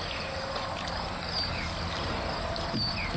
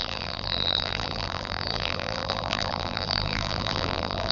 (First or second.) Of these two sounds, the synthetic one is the second